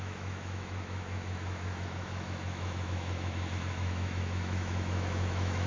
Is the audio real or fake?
fake